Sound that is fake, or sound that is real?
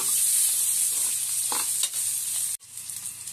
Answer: real